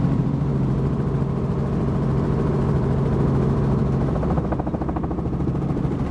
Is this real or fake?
fake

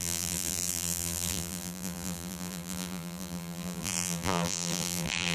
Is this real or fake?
fake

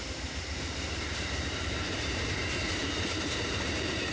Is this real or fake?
fake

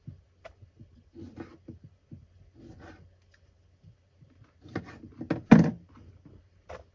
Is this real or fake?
real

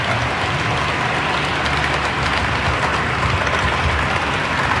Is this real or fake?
real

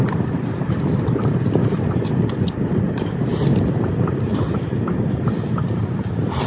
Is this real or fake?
real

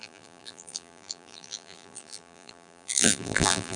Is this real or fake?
fake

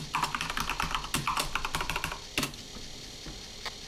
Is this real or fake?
real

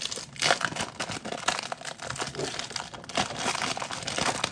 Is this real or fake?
real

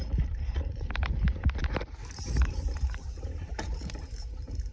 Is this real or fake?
fake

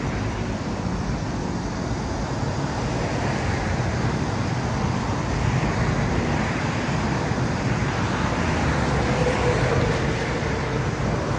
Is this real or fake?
real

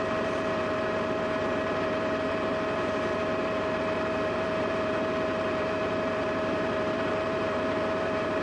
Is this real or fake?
fake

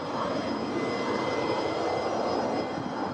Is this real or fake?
real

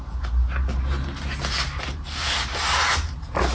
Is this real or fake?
real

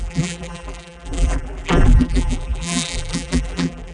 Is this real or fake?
fake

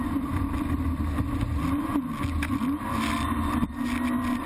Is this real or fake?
real